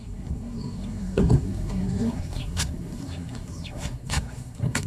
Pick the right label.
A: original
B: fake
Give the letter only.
B